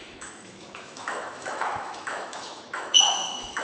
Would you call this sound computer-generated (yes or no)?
yes